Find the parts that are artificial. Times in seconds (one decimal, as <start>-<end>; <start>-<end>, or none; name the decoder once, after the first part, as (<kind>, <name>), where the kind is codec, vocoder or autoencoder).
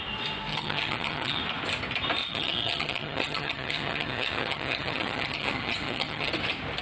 0.5-1.4 (vocoder, HiFi-GAN); 2.2-6.3